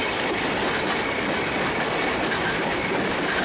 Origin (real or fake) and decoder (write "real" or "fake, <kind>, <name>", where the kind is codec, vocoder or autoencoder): real